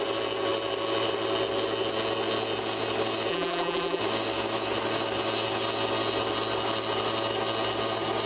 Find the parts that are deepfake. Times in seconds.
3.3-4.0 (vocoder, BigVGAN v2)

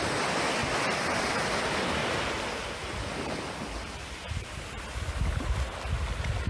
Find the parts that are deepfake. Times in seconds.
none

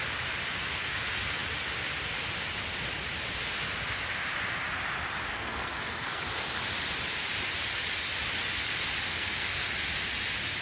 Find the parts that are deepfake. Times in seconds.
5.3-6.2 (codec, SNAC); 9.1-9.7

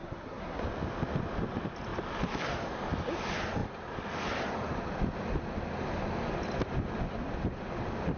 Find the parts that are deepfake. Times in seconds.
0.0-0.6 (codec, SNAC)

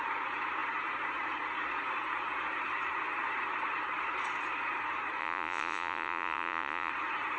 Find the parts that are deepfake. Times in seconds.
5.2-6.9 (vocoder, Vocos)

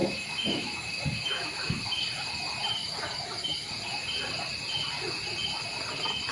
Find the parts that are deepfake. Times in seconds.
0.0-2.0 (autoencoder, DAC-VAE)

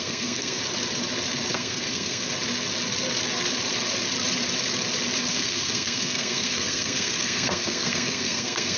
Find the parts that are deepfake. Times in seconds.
0.0-0.6 (codec, SNAC); 1.5-2.3; 5.3-8.8